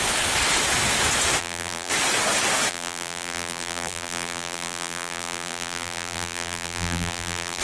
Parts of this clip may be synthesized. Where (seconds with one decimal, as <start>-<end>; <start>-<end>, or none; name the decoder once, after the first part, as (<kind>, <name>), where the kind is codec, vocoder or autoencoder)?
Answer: 1.4-1.9 (vocoder, BigVGAN v2); 2.7-7.6